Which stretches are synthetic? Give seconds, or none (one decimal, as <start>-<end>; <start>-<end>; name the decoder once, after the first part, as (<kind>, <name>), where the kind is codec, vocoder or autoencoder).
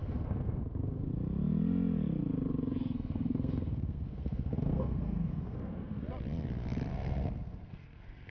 0.0-1.1 (codec, SNAC); 2.8-6.0; 6.9-8.3